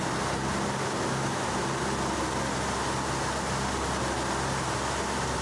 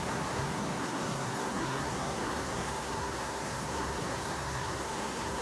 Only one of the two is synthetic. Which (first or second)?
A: second